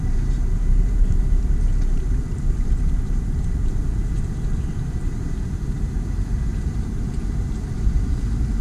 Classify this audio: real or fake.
fake